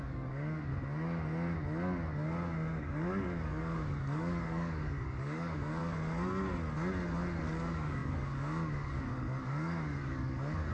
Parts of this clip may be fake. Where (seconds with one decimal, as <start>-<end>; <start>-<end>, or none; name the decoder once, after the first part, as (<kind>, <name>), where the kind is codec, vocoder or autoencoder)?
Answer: 0.0-0.7 (codec, DAC); 2.8-5.8; 7.4-10.7